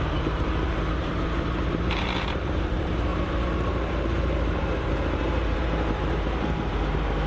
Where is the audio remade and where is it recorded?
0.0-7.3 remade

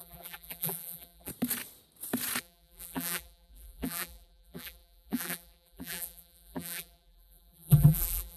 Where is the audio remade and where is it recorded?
0.0-1.3 remade; 1.3-2.4 recorded; 2.4-8.4 remade

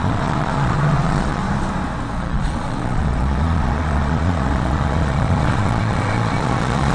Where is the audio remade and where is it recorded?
0.0-1.4 remade; 1.4-2.2 recorded; 2.2-6.9 remade